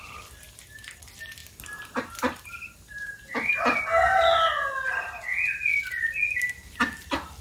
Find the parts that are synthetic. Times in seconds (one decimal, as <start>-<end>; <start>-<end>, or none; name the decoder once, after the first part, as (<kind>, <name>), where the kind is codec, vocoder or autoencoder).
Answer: none